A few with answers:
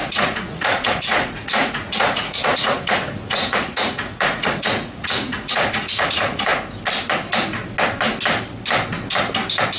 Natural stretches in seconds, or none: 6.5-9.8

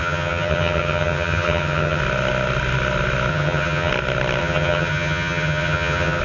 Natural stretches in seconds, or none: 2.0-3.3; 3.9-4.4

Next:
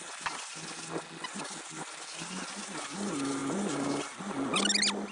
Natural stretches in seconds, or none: 0.0-5.1

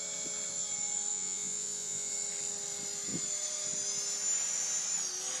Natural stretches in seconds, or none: 0.0-1.1; 2.1-5.4

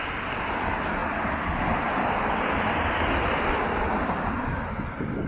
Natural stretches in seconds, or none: 0.0-5.3